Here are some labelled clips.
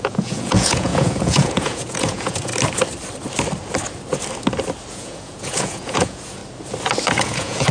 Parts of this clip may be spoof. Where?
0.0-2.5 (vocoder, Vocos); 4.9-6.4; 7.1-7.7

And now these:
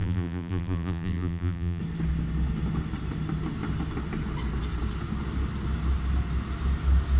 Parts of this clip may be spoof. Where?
0.0-1.8 (vocoder, BigVGAN v2)

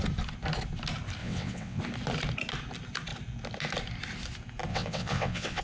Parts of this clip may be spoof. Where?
1.2-1.8 (vocoder, WaveNeXt); 4.7-5.6

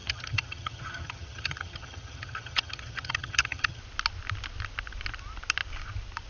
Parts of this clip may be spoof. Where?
0.0-3.8 (vocoder, HiFi-GAN)

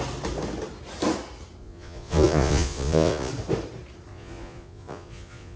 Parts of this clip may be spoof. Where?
1.6-3.3 (vocoder, Vocos); 4.1-5.6

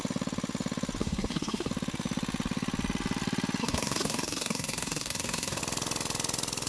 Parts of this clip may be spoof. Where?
1.0-1.7 (codec, SNAC); 3.6-5.6